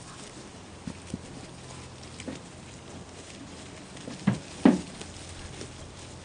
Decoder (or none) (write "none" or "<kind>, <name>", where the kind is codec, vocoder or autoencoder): none